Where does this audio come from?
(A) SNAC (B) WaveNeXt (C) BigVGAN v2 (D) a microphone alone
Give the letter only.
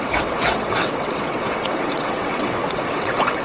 B